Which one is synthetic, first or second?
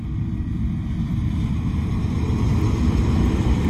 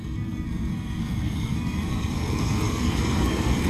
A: second